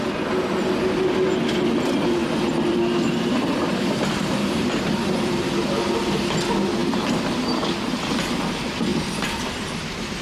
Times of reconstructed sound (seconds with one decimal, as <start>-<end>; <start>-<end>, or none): 2.2-5.0; 6.8-7.4; 8.9-9.7